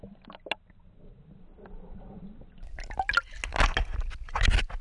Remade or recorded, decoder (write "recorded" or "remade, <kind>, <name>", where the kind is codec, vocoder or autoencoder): recorded